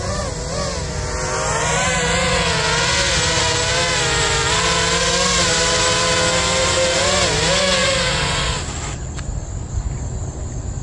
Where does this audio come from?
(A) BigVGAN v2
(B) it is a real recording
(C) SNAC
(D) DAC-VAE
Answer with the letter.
B